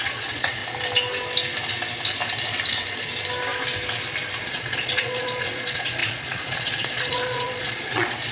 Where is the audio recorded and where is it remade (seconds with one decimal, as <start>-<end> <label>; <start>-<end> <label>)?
0.0-0.6 remade; 0.6-4.5 recorded; 4.5-8.3 remade